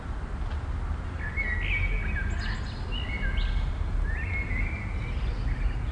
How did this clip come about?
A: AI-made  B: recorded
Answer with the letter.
B